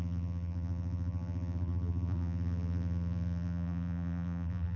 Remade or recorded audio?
remade